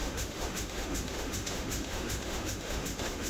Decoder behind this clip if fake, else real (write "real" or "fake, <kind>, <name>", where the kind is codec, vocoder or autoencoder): fake, autoencoder, DAC-VAE